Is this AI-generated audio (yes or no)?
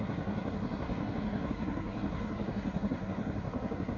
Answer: yes